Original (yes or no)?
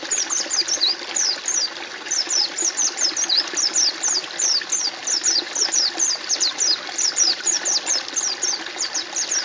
yes